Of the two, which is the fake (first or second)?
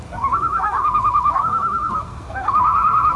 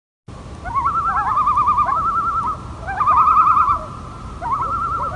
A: first